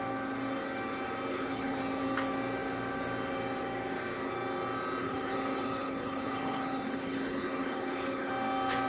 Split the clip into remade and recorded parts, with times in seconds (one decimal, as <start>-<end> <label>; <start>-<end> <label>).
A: 0.0-1.3 recorded; 1.3-1.8 remade; 1.8-5.0 recorded; 5.0-8.3 remade; 8.3-8.9 recorded